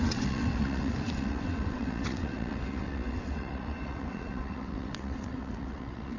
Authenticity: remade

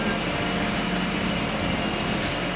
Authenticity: recorded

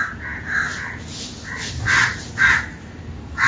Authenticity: recorded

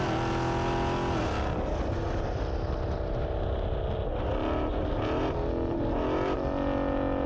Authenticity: recorded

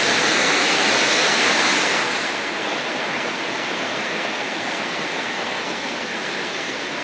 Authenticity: remade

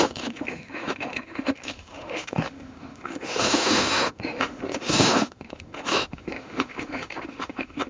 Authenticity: remade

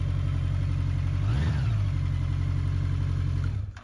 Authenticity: recorded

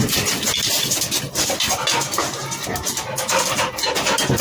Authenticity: recorded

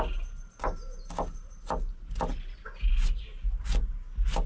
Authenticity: recorded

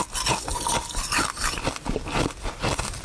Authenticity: recorded